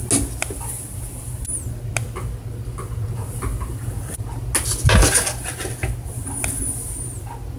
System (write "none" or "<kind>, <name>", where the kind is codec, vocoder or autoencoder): none